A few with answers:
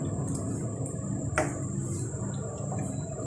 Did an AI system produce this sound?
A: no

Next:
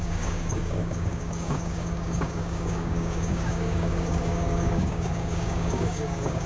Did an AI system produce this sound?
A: yes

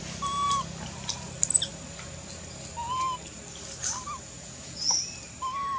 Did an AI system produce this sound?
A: no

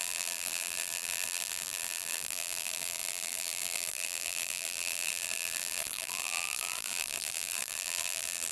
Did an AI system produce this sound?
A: yes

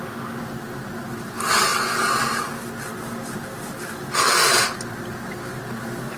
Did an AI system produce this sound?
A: no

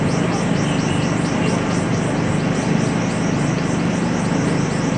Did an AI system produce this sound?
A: no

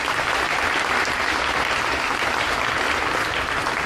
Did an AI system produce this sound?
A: yes